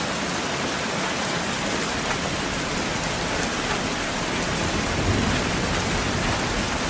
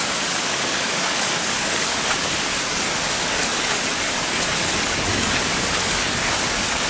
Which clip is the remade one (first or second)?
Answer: second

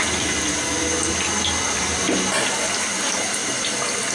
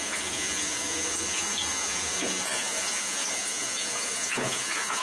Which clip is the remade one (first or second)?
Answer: second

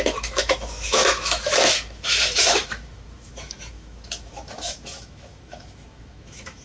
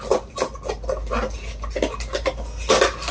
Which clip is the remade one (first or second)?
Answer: first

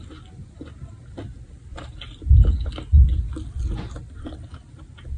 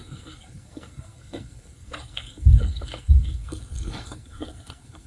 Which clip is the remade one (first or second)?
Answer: second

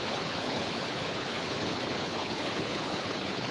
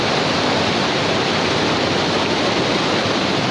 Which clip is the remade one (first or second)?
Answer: first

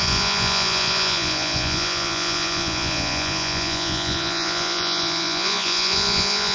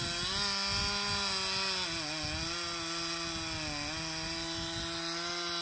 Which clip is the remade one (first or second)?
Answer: first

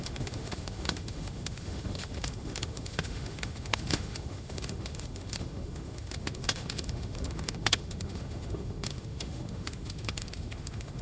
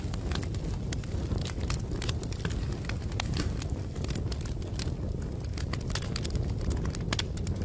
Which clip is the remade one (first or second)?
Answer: first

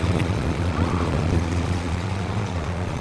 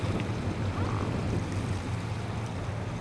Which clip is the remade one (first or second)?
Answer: first